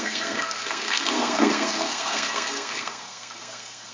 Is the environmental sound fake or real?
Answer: fake